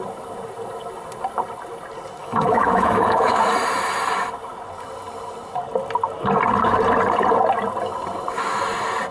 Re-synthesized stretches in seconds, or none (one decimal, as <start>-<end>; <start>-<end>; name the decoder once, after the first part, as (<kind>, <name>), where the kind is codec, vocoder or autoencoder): 2.2-3.4 (autoencoder, DAC-VAE)